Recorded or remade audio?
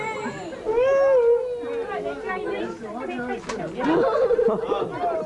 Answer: recorded